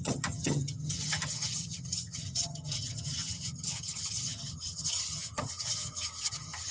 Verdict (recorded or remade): remade